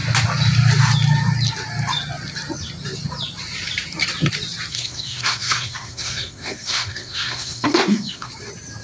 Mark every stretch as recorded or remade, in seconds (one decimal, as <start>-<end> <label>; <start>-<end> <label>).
0.0-4.7 recorded; 4.7-8.3 remade; 8.3-8.8 recorded